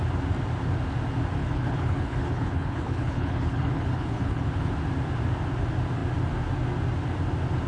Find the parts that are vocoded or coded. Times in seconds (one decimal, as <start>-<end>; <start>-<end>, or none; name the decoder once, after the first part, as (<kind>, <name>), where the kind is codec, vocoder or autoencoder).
1.4-4.7 (codec, HILCodec)